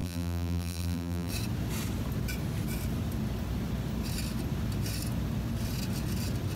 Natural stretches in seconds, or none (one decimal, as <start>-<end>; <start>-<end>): 1.3-6.6

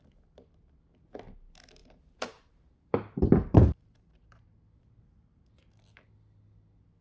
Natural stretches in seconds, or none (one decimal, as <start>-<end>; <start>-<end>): 0.0-1.8; 5.6-7.0

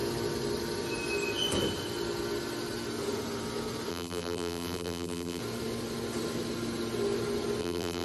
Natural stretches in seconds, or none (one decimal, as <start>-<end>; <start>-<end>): 0.0-3.9; 5.4-7.6

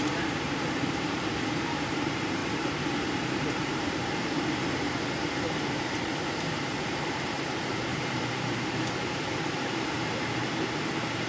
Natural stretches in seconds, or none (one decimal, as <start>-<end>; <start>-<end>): 2.4-3.1

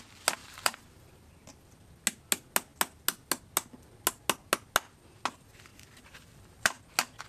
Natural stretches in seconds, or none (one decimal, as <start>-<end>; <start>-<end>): 0.0-0.4; 1.3-5.7; 6.8-7.3